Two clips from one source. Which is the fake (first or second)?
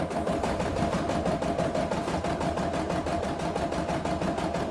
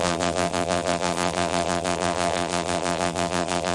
second